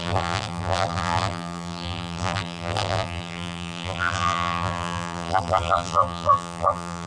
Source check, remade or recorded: remade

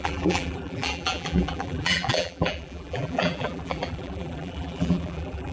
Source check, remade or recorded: remade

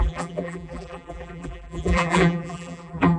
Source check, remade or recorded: remade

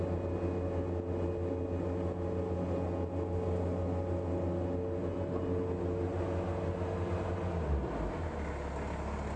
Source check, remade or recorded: recorded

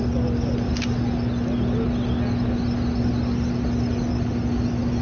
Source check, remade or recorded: recorded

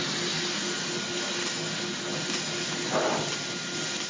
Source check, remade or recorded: recorded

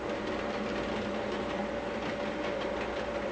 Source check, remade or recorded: recorded